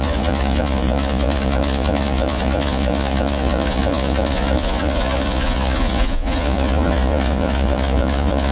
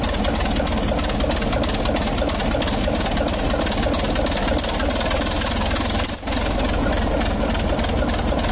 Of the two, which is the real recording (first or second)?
second